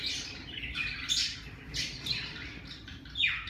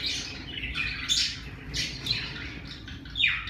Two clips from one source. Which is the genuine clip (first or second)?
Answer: second